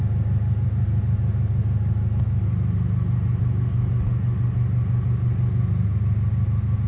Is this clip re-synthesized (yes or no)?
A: no